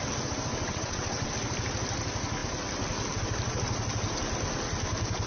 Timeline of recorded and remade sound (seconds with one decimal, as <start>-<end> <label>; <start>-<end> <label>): 0.0-0.6 recorded; 0.6-1.3 remade; 1.3-5.3 recorded